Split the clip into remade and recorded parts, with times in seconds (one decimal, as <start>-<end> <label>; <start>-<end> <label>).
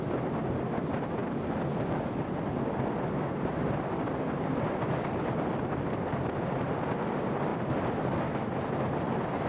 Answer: 0.0-9.5 recorded